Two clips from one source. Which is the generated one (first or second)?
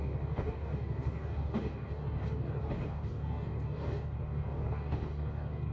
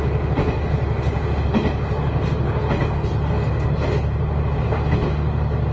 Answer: first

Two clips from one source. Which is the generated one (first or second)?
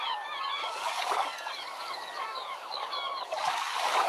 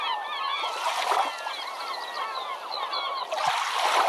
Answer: first